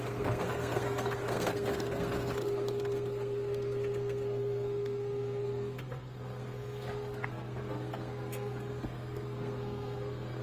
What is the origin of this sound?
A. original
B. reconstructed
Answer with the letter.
B